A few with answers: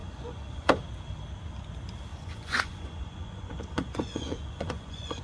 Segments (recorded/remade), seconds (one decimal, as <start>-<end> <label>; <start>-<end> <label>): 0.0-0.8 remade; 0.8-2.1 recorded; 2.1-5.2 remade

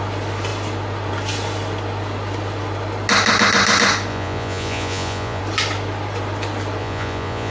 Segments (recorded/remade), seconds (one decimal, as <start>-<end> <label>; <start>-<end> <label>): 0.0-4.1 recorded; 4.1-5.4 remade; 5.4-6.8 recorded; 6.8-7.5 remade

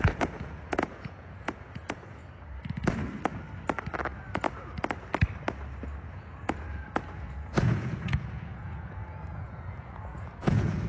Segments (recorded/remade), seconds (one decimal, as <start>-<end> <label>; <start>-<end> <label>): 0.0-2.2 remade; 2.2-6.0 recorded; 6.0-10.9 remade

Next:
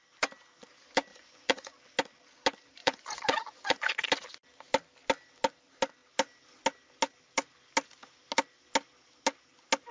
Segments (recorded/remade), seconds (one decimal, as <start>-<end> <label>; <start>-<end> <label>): 0.0-1.1 recorded; 1.1-1.7 remade; 1.7-2.8 recorded; 2.8-3.9 remade; 3.9-9.9 recorded